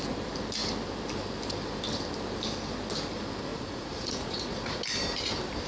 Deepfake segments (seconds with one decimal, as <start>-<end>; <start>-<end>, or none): 3.5-4.8